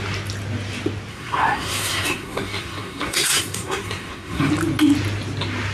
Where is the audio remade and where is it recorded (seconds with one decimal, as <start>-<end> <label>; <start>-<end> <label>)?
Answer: 0.0-1.1 recorded; 1.1-4.5 remade; 4.5-5.7 recorded